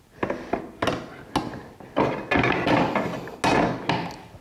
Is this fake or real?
real